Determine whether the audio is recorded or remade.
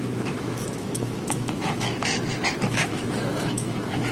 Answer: remade